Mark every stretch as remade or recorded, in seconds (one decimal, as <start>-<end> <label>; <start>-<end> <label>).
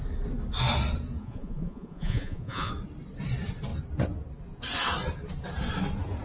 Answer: 0.0-1.2 recorded; 1.2-2.7 remade; 2.7-6.2 recorded